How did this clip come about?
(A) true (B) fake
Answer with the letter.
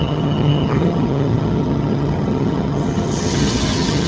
B